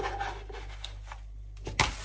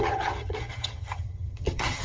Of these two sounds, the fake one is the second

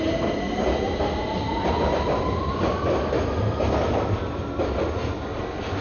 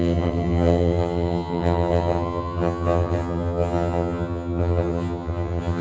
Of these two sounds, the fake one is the second